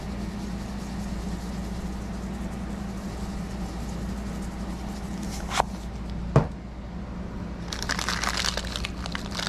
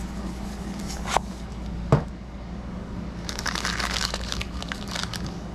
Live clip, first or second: first